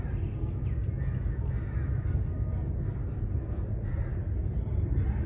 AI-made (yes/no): no